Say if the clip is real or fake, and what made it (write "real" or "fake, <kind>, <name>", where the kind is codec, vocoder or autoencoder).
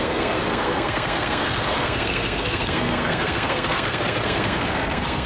fake, codec, SNAC